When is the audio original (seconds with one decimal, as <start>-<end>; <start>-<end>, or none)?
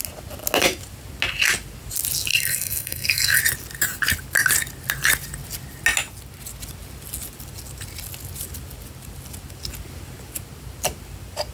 0.0-2.3; 3.4-11.5